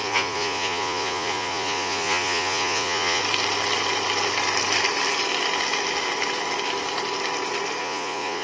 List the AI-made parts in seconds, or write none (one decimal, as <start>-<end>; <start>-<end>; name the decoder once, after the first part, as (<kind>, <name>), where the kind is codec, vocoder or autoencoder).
0.0-3.2 (vocoder, Vocos); 7.8-8.4